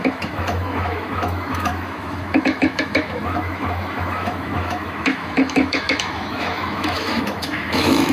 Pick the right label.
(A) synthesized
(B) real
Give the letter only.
A